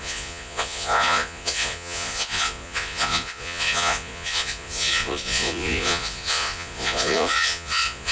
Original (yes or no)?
no